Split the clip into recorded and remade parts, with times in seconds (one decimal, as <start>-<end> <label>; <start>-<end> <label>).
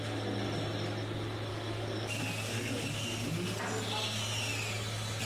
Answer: 0.0-1.5 recorded; 1.5-2.2 remade; 2.2-5.3 recorded